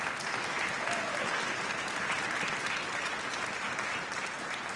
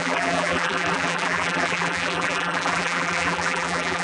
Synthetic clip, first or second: second